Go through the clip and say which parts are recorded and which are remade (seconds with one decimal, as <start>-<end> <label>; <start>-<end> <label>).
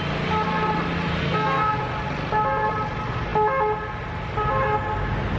0.0-1.2 recorded; 1.2-1.8 remade; 1.8-5.4 recorded